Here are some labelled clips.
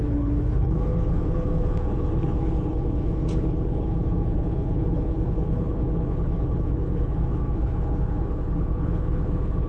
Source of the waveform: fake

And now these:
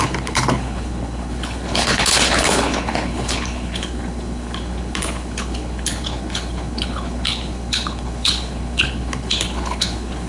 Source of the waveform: fake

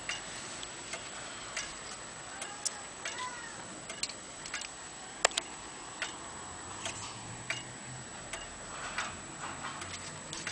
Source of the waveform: real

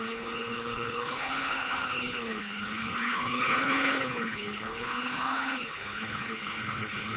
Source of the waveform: fake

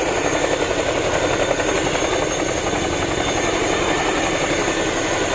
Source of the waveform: real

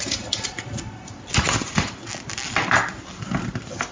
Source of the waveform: real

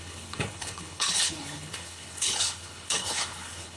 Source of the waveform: fake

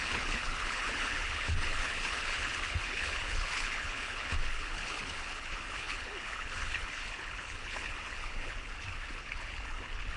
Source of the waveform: fake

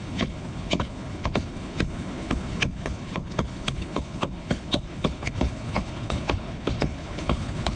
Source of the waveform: fake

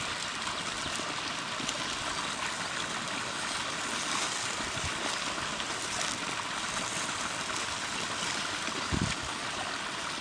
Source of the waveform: real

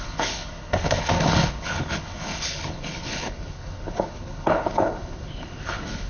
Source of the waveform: fake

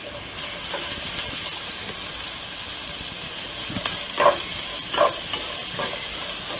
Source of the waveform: real